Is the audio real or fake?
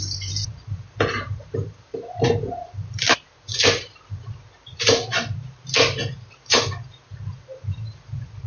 fake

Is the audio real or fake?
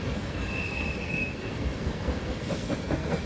fake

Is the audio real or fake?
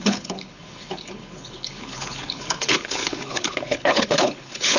fake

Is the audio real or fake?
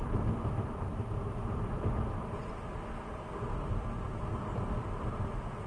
fake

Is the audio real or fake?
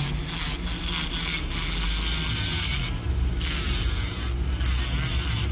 real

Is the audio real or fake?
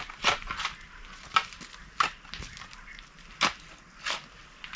real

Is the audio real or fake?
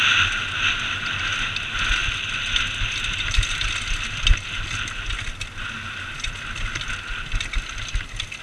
real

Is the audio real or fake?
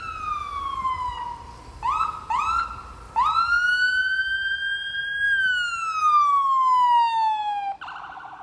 real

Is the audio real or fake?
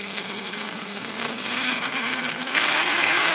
fake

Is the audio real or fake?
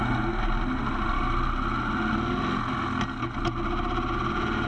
real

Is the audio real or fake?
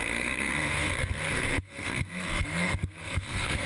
fake